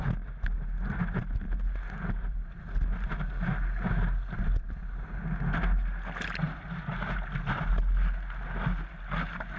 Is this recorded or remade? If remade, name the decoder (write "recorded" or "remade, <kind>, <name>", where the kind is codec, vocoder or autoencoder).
recorded